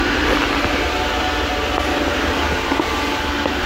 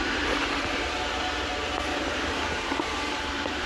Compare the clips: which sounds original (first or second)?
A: first